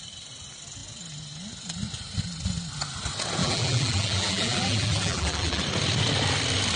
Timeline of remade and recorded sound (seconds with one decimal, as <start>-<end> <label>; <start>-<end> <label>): 0.0-3.4 recorded; 3.4-5.6 remade; 5.6-6.8 recorded